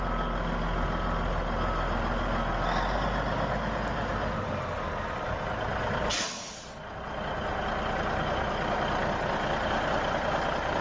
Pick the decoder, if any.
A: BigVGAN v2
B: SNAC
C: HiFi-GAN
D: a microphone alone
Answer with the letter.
D